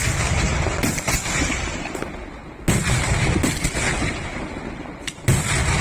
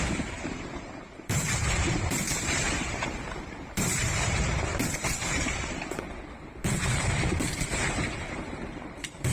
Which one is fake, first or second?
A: second